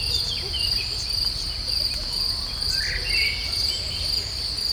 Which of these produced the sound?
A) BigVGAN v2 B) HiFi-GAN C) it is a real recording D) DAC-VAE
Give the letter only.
C